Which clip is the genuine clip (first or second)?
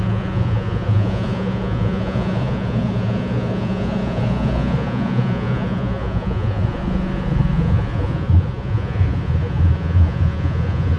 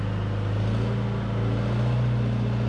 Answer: second